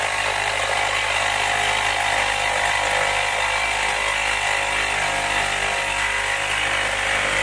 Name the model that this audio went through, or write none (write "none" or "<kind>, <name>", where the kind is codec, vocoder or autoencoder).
none